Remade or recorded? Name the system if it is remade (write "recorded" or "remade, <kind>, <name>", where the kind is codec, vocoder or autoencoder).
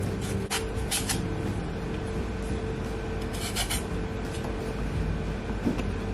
recorded